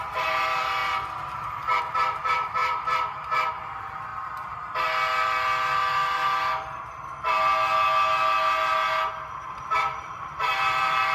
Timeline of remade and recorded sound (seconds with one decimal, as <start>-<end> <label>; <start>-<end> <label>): 0.0-0.8 remade; 0.8-1.8 recorded; 1.8-4.1 remade; 4.1-9.1 recorded; 9.1-11.1 remade